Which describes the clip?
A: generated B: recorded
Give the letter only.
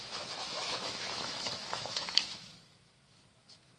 A